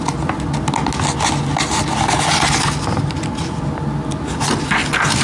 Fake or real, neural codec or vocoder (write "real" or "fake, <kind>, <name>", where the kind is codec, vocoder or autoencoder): real